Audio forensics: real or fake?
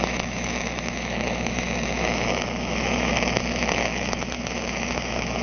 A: fake